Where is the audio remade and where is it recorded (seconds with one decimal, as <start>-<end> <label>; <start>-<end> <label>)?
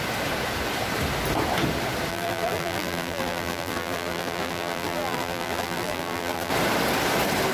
0.0-2.1 recorded; 2.1-6.5 remade; 6.5-7.5 recorded